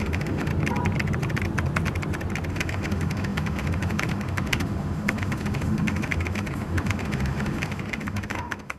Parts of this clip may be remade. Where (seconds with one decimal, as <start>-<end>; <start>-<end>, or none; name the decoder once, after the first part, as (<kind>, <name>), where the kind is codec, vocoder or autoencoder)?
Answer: 0.0-0.5 (autoencoder, DAC-VAE); 2.5-8.8